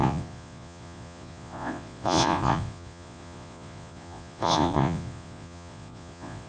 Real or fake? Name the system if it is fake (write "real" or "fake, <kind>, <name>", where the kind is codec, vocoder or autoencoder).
fake, vocoder, Vocos